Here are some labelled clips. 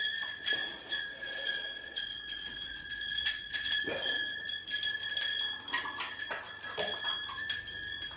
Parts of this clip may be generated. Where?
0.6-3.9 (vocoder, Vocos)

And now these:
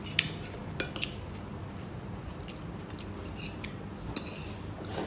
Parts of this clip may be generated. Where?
none

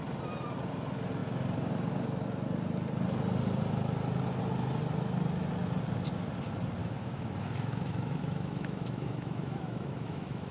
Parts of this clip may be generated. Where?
6.8-10.5 (autoencoder, DAC-VAE)

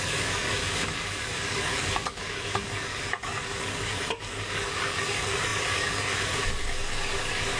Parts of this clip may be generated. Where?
0.0-7.6 (codec, DAC)

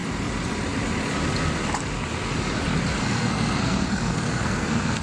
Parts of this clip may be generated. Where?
3.0-5.0 (codec, SNAC)

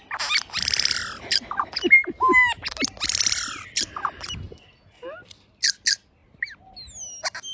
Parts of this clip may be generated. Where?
none